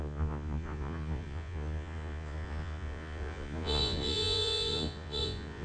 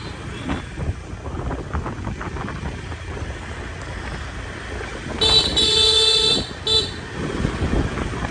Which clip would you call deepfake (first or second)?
first